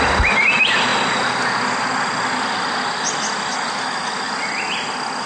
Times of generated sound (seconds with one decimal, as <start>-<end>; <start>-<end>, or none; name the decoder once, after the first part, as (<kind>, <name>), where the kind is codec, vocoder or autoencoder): none